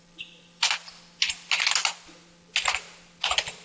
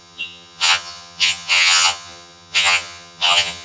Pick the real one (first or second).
first